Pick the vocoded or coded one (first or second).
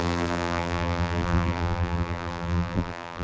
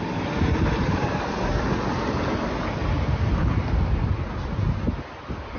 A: first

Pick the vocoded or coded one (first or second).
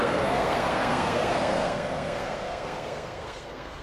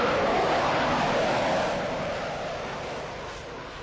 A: first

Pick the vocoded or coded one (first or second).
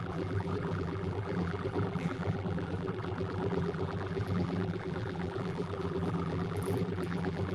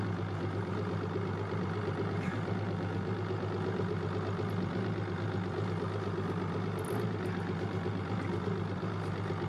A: first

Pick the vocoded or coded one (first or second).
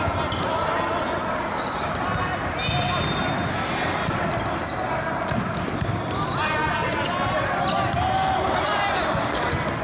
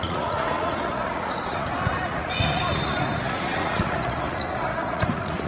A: second